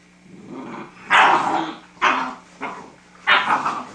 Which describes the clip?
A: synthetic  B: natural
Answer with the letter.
B